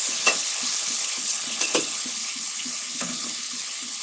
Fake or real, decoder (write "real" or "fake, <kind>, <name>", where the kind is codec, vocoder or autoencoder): fake, codec, HILCodec